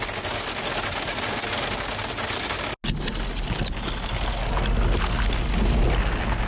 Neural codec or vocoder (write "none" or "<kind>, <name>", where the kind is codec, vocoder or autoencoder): none